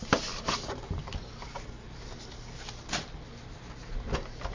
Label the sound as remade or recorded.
recorded